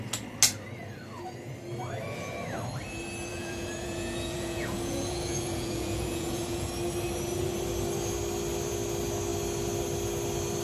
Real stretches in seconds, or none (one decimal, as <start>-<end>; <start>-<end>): 0.0-3.3; 6.7-10.6